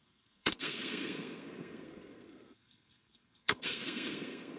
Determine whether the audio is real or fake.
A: fake